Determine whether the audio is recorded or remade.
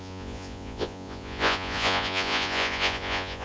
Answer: remade